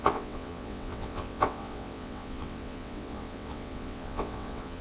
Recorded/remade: remade